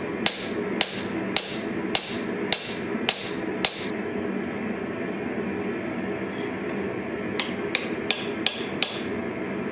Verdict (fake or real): real